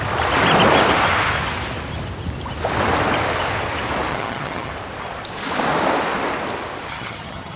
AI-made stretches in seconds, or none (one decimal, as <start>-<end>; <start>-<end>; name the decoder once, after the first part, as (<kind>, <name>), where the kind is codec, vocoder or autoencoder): 4.1-4.7 (vocoder, HiFi-GAN); 6.9-7.6